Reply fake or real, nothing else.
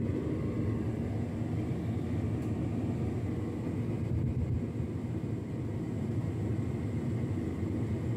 real